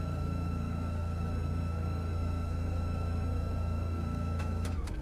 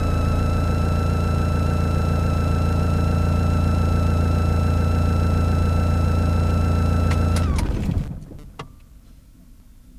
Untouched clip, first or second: second